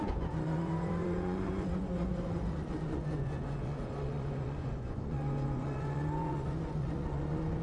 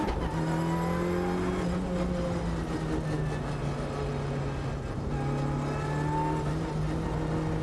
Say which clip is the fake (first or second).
first